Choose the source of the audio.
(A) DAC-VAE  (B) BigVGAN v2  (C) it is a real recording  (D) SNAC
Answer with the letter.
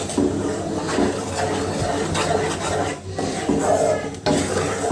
C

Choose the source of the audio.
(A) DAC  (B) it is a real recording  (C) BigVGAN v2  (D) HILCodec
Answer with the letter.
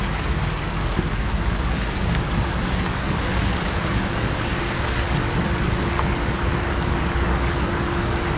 A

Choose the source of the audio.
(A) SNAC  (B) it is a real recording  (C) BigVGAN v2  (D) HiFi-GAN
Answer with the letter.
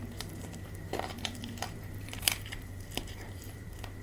C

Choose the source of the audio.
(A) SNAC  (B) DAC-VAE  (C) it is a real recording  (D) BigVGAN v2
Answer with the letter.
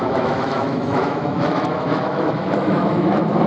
B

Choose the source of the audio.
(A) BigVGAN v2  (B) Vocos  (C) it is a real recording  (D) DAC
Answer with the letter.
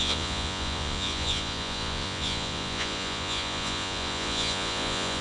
B